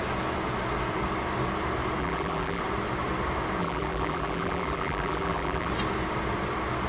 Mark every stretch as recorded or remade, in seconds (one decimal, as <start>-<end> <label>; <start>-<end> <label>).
0.0-2.0 recorded; 2.0-2.6 remade; 2.6-3.6 recorded; 3.6-5.7 remade; 5.7-6.9 recorded